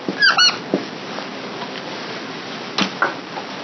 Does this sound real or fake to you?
real